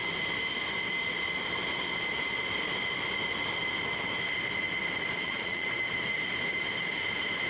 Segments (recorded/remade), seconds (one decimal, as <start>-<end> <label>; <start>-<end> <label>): 0.0-5.2 recorded; 5.2-5.7 remade; 5.7-7.5 recorded